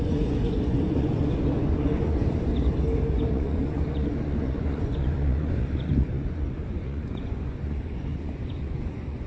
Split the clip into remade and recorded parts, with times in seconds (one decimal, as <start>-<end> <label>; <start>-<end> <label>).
0.0-2.5 remade; 2.5-3.3 recorded; 3.3-9.3 remade

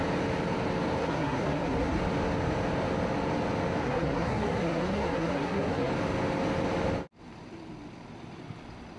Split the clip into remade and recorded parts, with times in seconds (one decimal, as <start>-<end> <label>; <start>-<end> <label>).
0.0-1.0 recorded; 1.0-2.0 remade; 2.0-3.8 recorded; 3.8-5.9 remade; 5.9-9.0 recorded